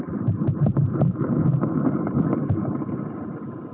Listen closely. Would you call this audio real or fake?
real